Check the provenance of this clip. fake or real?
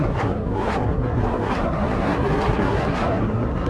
fake